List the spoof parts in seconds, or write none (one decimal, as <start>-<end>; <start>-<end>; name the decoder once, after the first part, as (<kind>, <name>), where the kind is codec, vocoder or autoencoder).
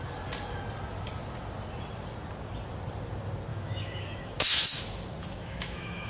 3.5-4.8 (autoencoder, DAC-VAE); 5.2-6.1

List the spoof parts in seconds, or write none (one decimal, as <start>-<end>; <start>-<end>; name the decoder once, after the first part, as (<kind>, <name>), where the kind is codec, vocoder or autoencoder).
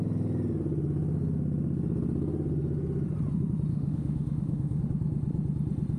3.7-4.8 (autoencoder, DAC-VAE)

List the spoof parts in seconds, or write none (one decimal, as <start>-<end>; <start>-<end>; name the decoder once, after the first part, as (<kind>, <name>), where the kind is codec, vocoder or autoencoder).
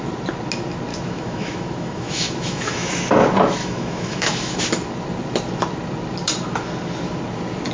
0.9-2.9 (autoencoder, DAC-VAE); 3.6-4.6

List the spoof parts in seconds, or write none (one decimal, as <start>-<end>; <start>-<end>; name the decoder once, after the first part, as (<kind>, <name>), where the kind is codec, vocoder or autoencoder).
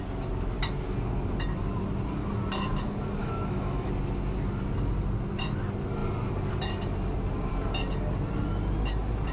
3.2-3.9 (autoencoder, DAC-VAE)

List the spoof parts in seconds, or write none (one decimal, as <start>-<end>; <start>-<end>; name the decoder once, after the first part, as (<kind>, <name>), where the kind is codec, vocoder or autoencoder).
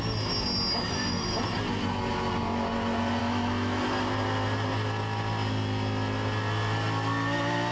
3.2-3.8 (autoencoder, DAC-VAE)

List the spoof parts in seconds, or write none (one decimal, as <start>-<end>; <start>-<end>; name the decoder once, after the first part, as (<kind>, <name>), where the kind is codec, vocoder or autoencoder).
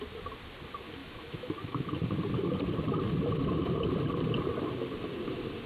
1.0-1.9 (autoencoder, DAC-VAE)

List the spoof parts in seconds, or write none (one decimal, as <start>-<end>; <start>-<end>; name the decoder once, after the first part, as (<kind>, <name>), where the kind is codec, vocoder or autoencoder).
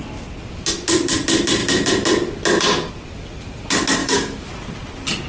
4.0-4.5 (autoencoder, DAC-VAE)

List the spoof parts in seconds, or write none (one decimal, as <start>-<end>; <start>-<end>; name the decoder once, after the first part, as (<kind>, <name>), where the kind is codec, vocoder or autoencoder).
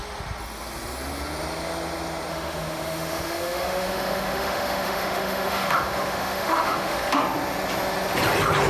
2.3-7.2 (autoencoder, DAC-VAE)